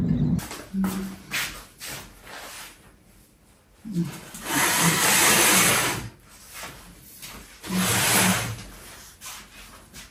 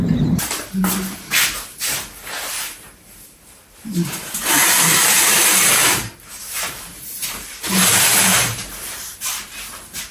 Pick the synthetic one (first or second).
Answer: second